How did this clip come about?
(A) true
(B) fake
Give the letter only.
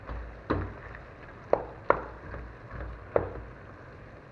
A